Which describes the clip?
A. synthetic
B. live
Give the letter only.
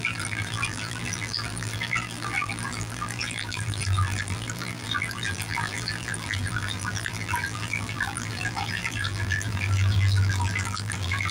A